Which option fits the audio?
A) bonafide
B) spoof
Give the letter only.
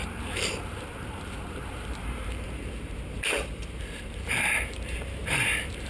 B